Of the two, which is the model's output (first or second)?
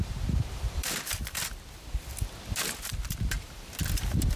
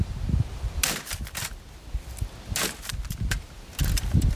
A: first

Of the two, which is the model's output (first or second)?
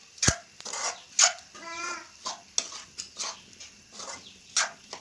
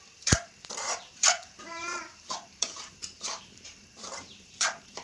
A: second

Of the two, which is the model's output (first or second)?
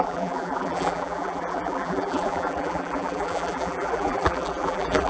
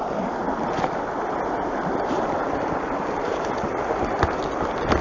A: first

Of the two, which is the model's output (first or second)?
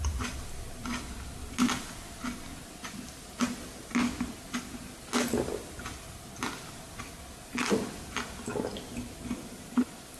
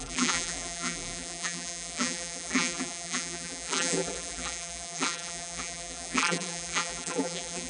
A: second